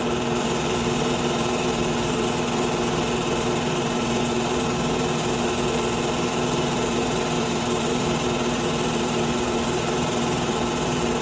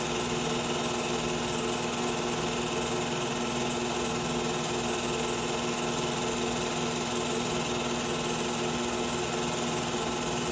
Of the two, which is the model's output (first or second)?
first